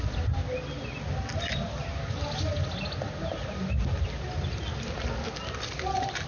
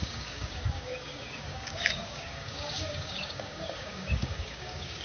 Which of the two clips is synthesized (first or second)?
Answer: second